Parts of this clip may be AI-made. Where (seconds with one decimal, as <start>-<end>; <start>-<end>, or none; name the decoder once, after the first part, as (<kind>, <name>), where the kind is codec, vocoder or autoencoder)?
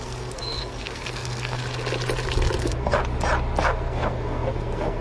0.0-1.6 (codec, SNAC); 2.6-3.0; 3.6-5.0